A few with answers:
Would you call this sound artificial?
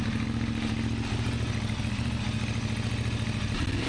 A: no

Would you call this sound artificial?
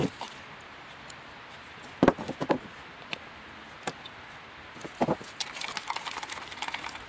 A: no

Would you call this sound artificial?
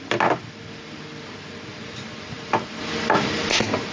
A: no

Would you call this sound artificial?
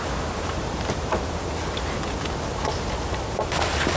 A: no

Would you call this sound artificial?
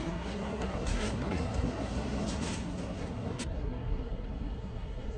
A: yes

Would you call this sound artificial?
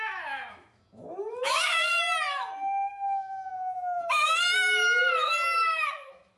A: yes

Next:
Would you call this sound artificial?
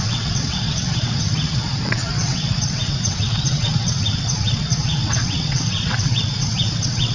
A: yes